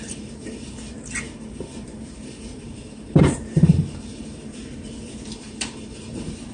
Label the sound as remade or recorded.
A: remade